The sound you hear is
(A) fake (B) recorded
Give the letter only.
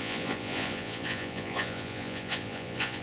A